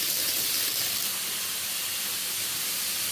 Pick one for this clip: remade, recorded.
recorded